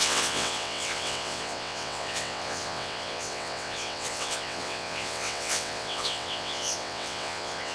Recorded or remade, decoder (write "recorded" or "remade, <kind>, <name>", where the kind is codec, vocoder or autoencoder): remade, vocoder, WaveNeXt